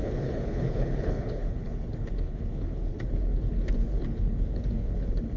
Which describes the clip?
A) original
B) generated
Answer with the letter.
B